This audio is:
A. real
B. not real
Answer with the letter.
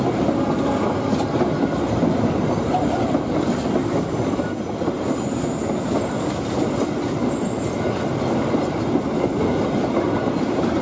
A